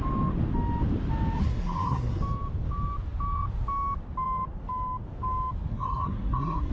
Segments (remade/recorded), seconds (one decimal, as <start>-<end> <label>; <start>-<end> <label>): 0.0-1.4 recorded; 1.4-2.2 remade; 2.2-5.7 recorded; 5.7-6.7 remade